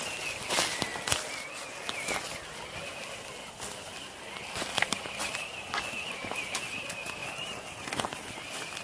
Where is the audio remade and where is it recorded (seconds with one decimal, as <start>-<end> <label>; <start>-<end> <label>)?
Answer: 0.0-8.8 recorded